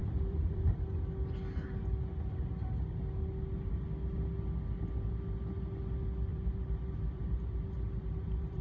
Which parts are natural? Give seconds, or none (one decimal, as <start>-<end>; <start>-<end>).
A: 0.7-6.3